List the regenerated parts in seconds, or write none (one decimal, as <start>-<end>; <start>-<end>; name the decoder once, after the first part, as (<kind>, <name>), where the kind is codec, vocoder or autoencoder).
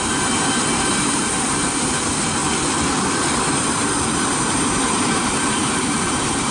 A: 0.0-2.4 (vocoder, BigVGAN v2); 3.6-6.5